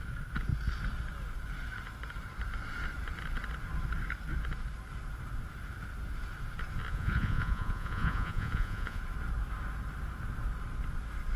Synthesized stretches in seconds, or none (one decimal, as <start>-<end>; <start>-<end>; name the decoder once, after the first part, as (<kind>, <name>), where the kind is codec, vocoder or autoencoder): 6.9-9.0 (vocoder, Vocos)